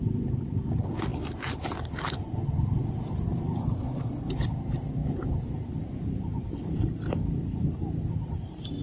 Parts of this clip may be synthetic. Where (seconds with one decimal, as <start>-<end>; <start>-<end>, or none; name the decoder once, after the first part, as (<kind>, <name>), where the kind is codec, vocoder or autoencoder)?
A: 3.6-4.3 (codec, HILCodec)

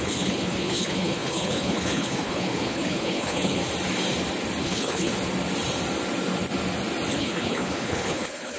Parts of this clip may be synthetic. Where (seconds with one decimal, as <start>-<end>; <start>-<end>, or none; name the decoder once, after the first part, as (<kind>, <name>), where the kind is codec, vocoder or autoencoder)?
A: 0.0-3.6 (codec, HILCodec); 4.6-5.1; 7.1-8.6

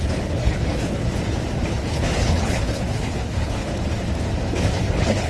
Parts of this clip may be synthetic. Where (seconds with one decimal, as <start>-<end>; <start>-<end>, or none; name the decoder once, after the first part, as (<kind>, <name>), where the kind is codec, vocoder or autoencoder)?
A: 0.0-1.1 (codec, HILCodec); 1.7-3.7; 4.8-5.3